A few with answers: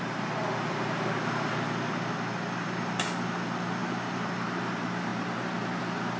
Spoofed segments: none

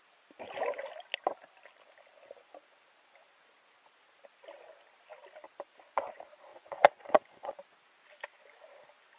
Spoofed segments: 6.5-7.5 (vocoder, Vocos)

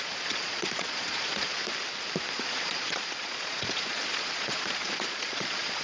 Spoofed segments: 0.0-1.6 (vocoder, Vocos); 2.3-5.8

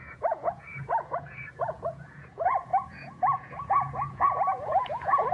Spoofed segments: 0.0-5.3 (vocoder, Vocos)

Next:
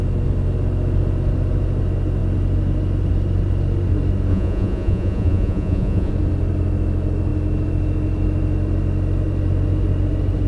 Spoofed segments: 4.3-6.1 (vocoder, Vocos)